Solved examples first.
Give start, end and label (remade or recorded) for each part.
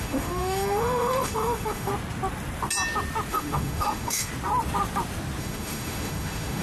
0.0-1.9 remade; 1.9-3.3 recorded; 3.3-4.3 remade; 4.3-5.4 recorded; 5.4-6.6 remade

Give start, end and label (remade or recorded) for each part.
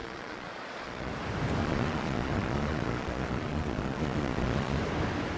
0.0-1.1 remade; 1.1-1.6 recorded; 1.6-4.8 remade; 4.8-5.4 recorded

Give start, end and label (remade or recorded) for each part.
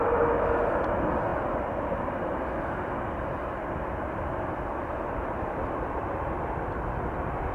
0.0-7.5 recorded